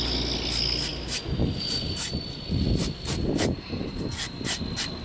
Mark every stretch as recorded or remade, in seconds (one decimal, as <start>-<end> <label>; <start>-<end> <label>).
0.0-5.0 recorded